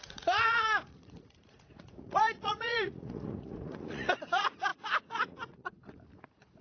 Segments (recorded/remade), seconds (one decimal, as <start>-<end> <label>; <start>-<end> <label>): 0.0-6.6 remade